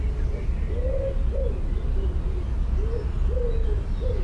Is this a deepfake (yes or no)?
no